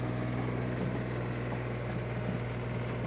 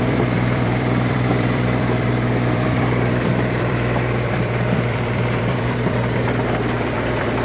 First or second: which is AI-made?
second